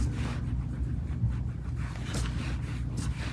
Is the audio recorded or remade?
recorded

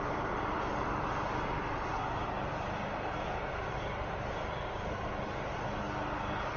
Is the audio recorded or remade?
recorded